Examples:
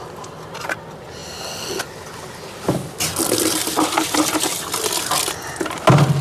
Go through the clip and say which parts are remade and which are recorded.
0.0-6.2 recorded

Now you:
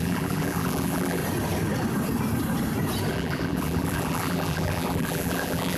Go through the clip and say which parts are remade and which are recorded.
0.0-1.2 remade; 1.2-3.1 recorded; 3.1-5.8 remade